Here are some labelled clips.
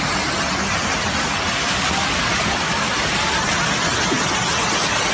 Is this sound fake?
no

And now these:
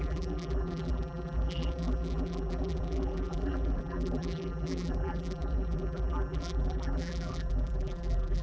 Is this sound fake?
yes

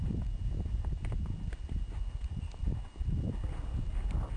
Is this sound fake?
no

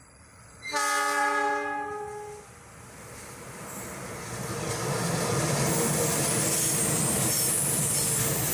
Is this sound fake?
no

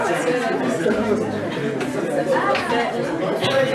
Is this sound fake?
no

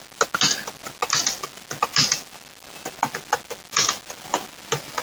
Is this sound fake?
no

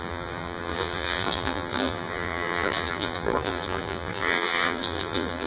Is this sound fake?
yes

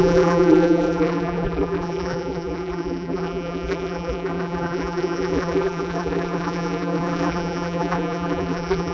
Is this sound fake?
yes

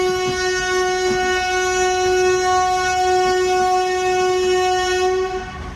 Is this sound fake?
no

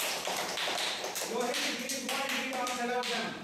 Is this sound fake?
yes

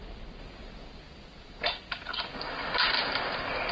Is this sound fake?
no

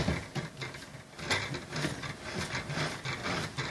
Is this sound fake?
no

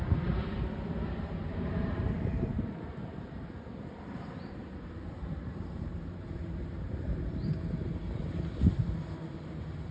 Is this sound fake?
yes